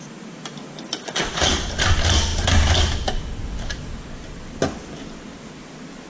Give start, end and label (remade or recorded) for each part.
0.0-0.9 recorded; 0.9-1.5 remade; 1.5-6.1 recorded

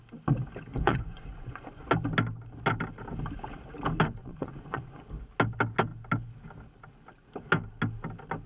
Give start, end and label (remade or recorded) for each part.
0.0-0.7 recorded; 0.7-1.9 remade; 1.9-4.2 recorded; 4.2-5.0 remade; 5.0-8.5 recorded

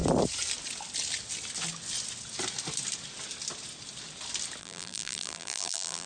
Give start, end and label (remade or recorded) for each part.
0.0-4.6 recorded; 4.6-6.1 remade

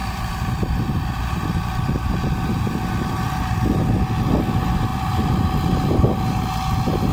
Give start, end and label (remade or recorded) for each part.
0.0-4.9 recorded; 4.9-5.4 remade; 5.4-7.1 recorded

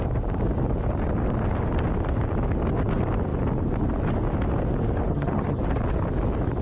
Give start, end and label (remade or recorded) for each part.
0.0-5.1 recorded; 5.1-5.6 remade; 5.6-6.6 recorded

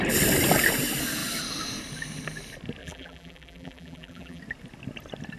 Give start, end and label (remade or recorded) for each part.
0.0-2.8 recorded; 2.8-4.4 remade; 4.4-5.4 recorded

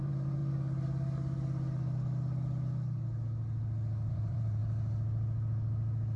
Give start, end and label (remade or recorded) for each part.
0.0-0.4 remade; 0.4-4.1 recorded; 4.1-4.6 remade; 4.6-6.2 recorded